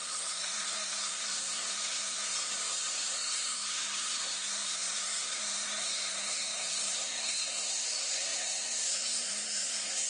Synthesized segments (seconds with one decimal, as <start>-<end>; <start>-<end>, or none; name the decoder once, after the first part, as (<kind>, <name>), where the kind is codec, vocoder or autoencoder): 0.0-10.1 (codec, SNAC)